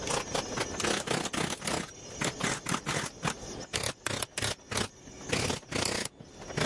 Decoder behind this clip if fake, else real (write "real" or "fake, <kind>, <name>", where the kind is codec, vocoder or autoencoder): real